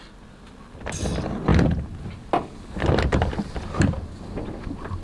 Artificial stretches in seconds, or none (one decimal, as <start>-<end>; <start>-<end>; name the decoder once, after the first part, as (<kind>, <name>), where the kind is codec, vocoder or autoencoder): none